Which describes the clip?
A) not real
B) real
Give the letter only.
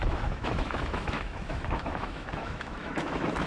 A